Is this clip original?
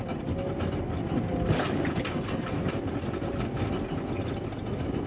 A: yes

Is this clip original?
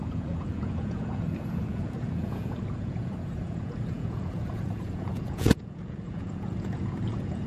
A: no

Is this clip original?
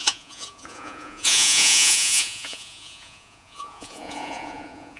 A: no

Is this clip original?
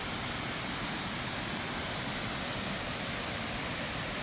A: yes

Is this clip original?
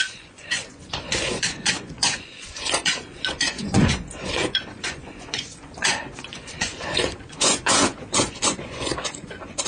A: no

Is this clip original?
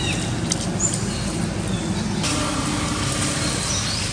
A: yes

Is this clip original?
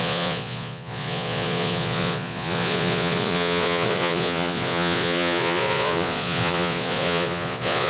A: no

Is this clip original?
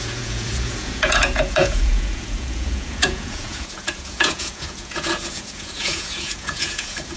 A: no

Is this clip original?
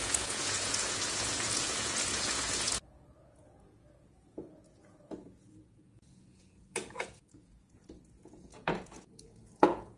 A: no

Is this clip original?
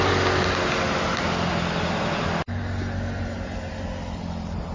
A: yes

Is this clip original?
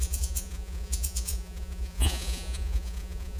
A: no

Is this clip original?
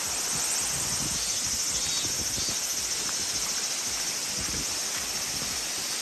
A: yes